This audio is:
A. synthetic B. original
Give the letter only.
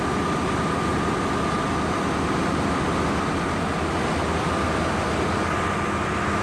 B